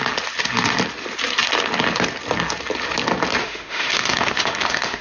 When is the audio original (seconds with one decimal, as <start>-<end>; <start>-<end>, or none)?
0.0-3.4